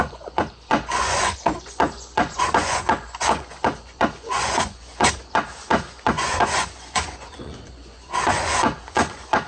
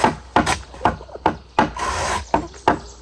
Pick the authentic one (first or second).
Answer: second